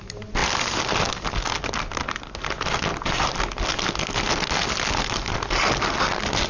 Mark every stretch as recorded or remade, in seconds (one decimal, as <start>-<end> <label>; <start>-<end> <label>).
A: 0.0-6.5 recorded